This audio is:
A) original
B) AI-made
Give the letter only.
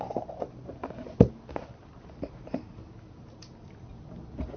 A